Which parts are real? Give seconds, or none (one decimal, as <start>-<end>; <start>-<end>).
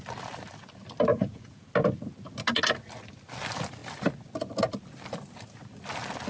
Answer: 0.0-1.1; 1.7-6.3